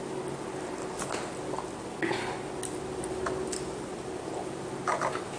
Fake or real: real